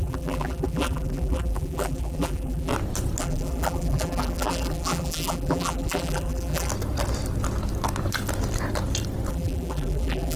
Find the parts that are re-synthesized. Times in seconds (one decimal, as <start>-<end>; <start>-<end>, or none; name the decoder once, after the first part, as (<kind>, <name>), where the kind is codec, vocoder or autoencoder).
0.0-2.7 (vocoder, BigVGAN v2); 3.2-6.7; 9.3-10.4